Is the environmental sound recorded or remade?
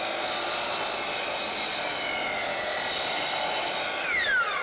recorded